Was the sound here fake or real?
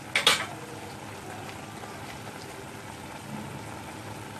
real